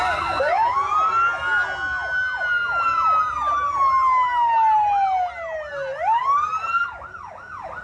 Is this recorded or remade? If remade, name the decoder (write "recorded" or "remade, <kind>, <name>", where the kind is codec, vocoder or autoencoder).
recorded